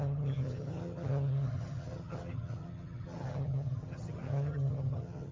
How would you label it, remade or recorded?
remade